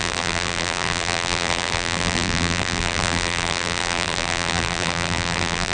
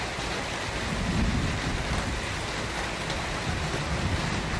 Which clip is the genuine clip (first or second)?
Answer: second